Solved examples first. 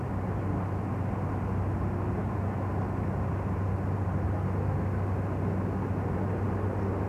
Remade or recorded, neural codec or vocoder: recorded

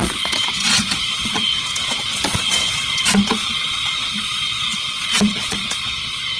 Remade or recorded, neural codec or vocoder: remade, vocoder, Vocos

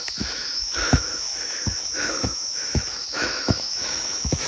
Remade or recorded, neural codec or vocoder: remade, autoencoder, DAC-VAE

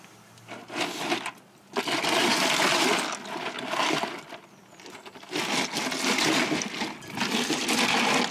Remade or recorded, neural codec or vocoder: recorded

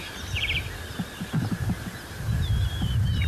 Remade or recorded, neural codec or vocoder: recorded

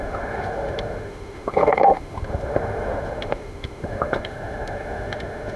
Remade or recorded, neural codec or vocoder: remade, autoencoder, DAC-VAE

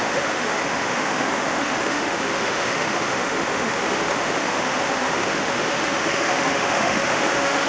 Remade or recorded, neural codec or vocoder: remade, autoencoder, DAC-VAE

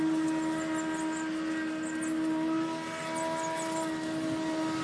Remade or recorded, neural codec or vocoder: recorded